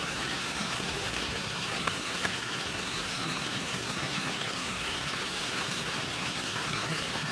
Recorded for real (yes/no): no